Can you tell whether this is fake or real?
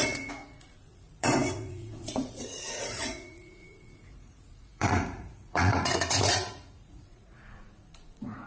fake